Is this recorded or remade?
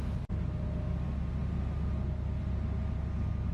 recorded